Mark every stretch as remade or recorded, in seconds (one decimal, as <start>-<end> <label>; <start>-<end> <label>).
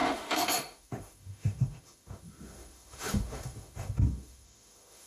0.0-5.1 remade